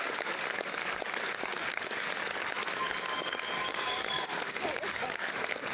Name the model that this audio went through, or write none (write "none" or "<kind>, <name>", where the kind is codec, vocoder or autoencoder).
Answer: codec, DAC